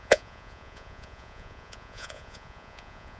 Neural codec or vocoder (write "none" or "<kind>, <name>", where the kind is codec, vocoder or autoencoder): vocoder, Vocos